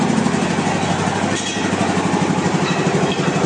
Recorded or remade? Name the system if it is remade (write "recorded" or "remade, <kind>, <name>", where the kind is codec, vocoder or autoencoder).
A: recorded